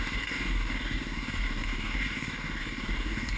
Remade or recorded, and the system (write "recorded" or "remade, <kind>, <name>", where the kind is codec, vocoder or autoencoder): remade, codec, DAC